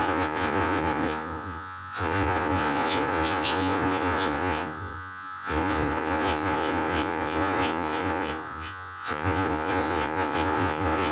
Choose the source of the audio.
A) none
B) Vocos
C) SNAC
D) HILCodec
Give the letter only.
B